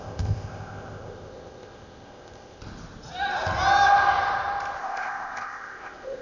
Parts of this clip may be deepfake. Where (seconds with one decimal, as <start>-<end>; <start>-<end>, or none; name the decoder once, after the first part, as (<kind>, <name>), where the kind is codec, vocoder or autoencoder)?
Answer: 0.0-2.6 (codec, ZipCodec); 4.8-6.2